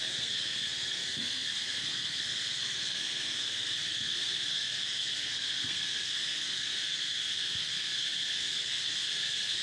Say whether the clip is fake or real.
fake